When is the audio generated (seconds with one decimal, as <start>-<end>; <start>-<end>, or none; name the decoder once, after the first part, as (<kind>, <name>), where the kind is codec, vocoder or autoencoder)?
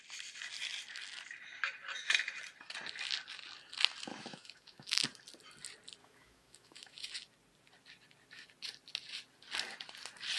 4.1-4.9 (autoencoder, DAC-VAE); 6.0-7.1